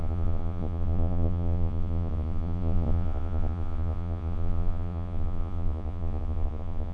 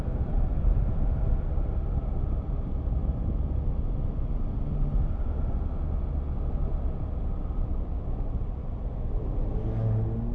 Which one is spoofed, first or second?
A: first